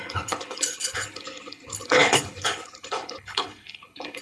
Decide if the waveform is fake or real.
fake